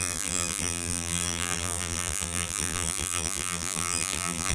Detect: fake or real fake